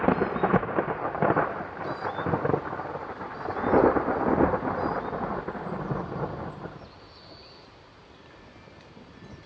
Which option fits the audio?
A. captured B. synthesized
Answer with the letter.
A